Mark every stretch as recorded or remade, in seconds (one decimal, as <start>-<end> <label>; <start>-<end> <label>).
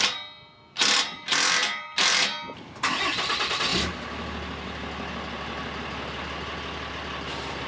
0.0-7.7 recorded